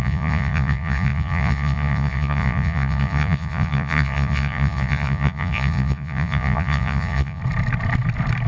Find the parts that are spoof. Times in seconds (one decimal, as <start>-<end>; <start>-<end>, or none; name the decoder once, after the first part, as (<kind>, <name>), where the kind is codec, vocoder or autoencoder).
0.0-7.4 (vocoder, Vocos)